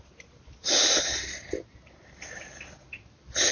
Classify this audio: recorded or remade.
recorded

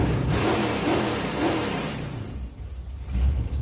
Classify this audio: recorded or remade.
recorded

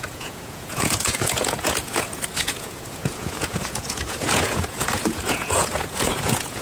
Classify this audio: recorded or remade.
remade